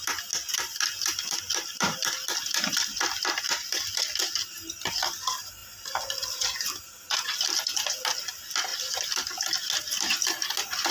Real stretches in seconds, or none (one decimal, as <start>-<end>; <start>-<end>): 0.0-0.5; 4.2-10.9

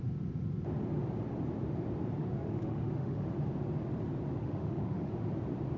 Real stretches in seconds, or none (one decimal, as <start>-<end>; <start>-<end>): 0.0-2.2; 3.3-4.4; 5.1-5.8

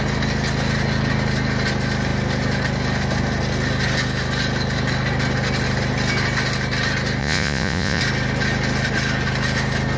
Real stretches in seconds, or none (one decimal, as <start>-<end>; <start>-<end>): 0.0-7.2; 8.0-10.0

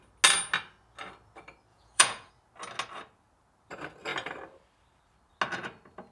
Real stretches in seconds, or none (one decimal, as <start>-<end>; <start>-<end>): 0.0-1.7; 2.3-6.1

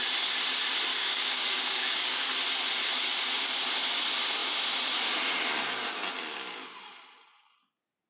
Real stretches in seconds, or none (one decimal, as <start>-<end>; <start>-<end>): 0.0-0.9; 2.3-8.1

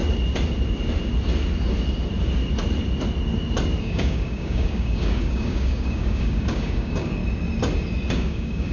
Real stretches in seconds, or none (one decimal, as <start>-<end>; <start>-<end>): 0.0-3.8; 7.2-8.1

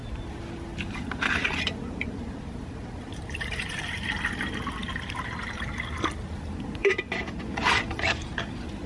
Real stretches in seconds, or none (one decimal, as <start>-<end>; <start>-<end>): 0.0-0.7; 4.9-6.8; 8.4-8.9